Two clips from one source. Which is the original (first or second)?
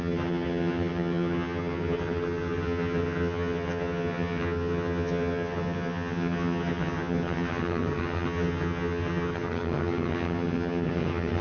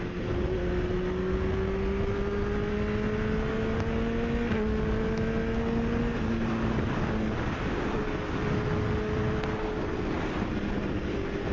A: second